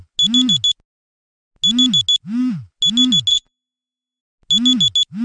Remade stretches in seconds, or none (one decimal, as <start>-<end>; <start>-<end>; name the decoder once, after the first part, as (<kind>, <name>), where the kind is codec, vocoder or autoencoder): 3.3-4.2 (vocoder, BigVGAN v2)